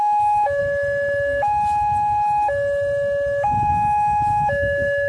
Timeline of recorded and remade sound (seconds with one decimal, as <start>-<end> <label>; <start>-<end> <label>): 0.0-0.6 remade; 0.6-3.7 recorded; 3.7-5.1 remade